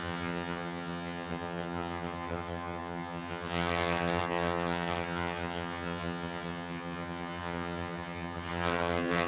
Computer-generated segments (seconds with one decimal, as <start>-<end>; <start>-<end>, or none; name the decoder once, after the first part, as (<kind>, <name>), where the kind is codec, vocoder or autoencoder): 0.0-9.3 (vocoder, HiFi-GAN)